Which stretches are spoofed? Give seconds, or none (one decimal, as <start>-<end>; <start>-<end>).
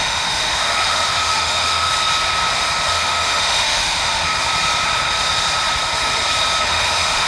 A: 0.0-1.9; 2.9-4.3; 6.6-7.3